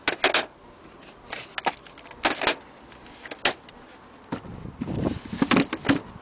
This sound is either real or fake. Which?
real